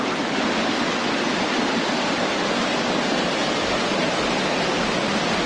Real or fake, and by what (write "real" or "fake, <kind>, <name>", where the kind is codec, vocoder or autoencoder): real